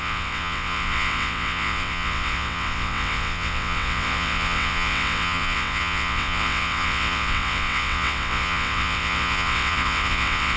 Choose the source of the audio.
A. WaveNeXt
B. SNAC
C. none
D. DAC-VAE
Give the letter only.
A